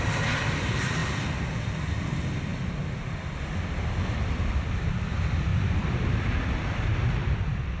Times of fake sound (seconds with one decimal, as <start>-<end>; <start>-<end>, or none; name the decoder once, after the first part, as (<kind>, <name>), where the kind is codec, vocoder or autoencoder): 0.0-1.0 (vocoder, BigVGAN v2); 1.8-2.5; 3.6-7.8